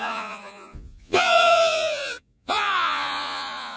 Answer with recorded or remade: remade